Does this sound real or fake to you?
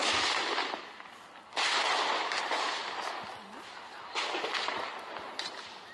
real